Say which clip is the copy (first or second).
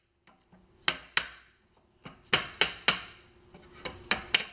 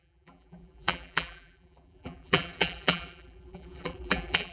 second